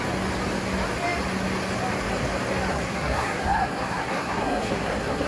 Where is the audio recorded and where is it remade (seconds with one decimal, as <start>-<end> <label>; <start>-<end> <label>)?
0.0-2.7 recorded; 2.7-5.3 remade